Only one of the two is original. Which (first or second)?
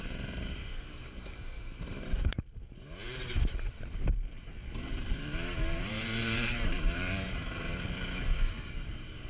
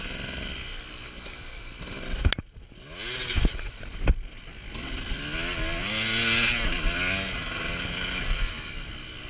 second